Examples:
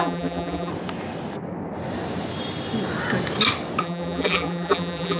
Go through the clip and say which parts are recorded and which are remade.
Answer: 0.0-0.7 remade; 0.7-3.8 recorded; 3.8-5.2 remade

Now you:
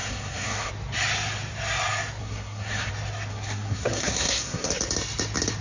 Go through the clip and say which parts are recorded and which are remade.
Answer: 0.0-0.7 remade; 0.7-2.2 recorded; 2.2-2.9 remade; 2.9-3.3 recorded; 3.3-4.7 remade; 4.7-5.6 recorded

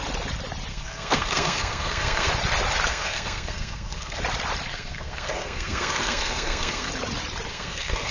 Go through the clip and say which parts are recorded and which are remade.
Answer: 0.0-0.7 recorded; 0.7-2.3 remade; 2.3-2.9 recorded; 2.9-4.2 remade; 4.2-4.7 recorded; 4.7-6.9 remade; 6.9-7.5 recorded; 7.5-8.1 remade

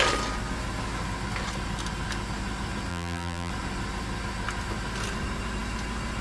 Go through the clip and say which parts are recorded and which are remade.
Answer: 0.0-2.9 recorded; 2.9-3.5 remade; 3.5-6.2 recorded

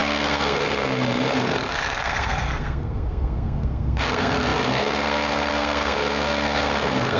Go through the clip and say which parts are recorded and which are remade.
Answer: 0.0-7.2 remade